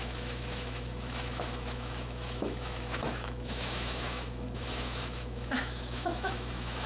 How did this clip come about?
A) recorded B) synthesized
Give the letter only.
B